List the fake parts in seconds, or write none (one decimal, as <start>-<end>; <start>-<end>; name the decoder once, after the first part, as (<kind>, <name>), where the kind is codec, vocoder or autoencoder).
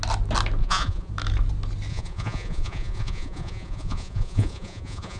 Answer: 0.6-1.1 (vocoder, Vocos); 1.9-5.2